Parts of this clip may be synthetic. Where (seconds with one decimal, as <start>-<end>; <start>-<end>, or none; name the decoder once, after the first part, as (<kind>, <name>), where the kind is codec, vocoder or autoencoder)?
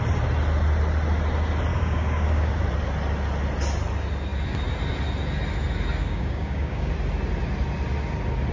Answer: 1.7-2.5 (codec, DAC); 6.0-6.9